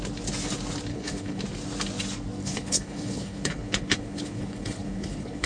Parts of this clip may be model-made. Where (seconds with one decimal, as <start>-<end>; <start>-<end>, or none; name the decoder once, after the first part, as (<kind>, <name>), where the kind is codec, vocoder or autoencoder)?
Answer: 0.9-1.4 (codec, HILCodec); 2.4-5.5